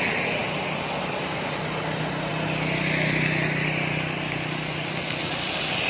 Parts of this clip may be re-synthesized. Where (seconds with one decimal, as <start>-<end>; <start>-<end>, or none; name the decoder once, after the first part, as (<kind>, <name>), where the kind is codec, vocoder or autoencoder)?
none